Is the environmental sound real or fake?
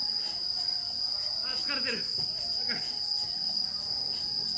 real